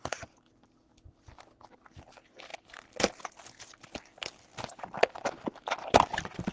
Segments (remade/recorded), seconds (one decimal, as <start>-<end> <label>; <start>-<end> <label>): 0.0-6.5 recorded